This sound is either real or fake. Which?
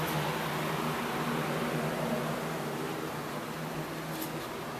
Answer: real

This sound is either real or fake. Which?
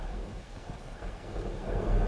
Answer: fake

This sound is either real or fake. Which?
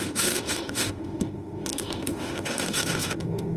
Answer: fake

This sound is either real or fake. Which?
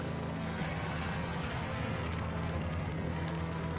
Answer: fake